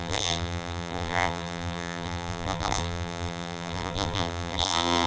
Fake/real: fake